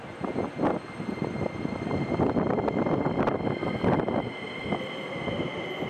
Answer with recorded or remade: recorded